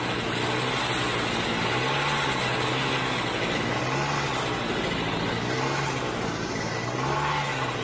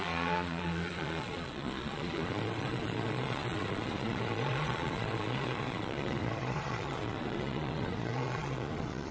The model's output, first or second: second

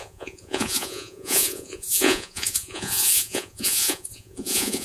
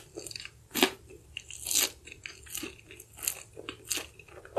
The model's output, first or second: first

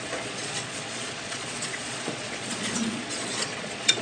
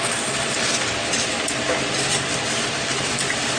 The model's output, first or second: first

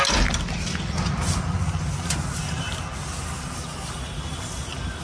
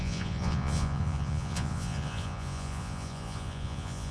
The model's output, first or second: second